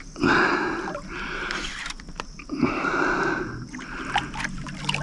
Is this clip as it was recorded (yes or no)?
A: yes